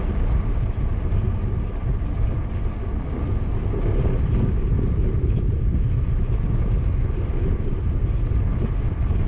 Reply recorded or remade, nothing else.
recorded